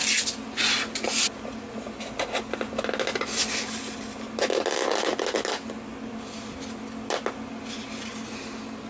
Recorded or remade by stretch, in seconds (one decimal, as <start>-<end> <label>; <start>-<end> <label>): 0.0-8.9 recorded